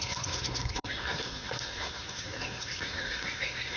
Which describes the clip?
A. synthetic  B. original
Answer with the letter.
A